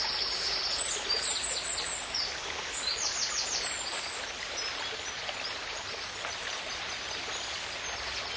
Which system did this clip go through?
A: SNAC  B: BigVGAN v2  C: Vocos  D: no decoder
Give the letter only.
D